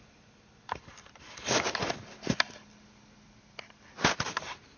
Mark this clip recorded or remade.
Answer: recorded